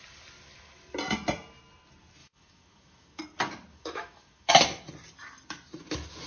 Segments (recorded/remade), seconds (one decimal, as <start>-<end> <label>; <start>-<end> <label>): 0.0-2.2 recorded; 2.2-3.2 remade; 3.2-3.7 recorded; 3.7-4.5 remade; 4.5-6.3 recorded